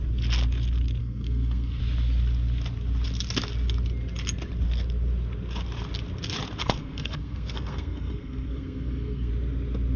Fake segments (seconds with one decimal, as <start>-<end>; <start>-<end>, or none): 1.0-1.8; 6.6-9.3